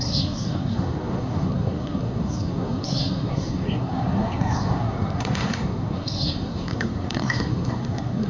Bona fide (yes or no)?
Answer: no